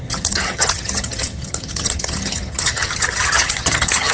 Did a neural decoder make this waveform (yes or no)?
yes